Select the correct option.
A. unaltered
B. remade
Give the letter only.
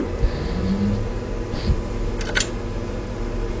A